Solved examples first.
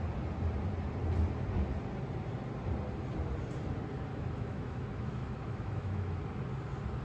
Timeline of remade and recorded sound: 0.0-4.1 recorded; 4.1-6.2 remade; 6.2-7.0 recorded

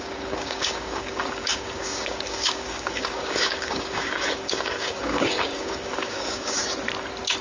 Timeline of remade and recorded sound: 0.0-6.6 remade; 6.6-7.4 recorded